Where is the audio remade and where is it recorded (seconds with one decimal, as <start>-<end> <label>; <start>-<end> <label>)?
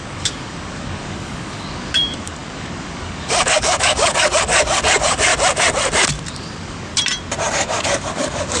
0.0-5.3 remade; 5.3-6.3 recorded; 6.3-6.9 remade; 6.9-7.5 recorded; 7.5-8.6 remade